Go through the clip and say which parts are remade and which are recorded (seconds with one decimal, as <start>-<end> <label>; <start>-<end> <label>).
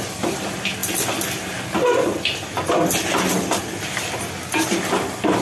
0.0-5.4 recorded